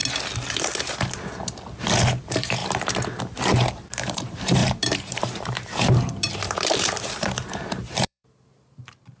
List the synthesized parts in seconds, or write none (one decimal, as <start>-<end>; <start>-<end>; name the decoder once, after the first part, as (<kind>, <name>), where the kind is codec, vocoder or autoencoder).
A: 2.2-2.6 (vocoder, BigVGAN v2); 3.7-9.2